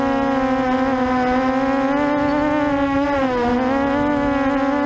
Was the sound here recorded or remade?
recorded